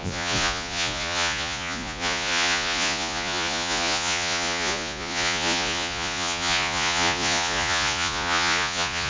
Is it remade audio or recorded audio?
remade